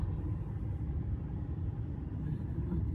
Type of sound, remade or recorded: recorded